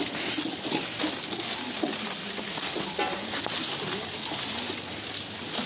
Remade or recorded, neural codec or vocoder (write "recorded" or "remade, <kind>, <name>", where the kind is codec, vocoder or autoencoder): recorded